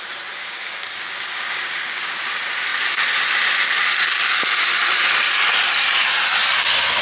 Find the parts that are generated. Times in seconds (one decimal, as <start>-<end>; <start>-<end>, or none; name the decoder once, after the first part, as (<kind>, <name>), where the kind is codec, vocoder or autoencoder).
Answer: 0.4-2.2 (codec, DAC)